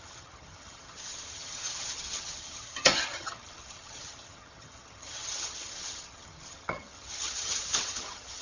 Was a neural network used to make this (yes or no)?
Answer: yes